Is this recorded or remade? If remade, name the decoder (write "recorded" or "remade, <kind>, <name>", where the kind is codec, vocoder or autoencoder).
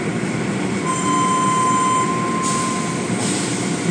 recorded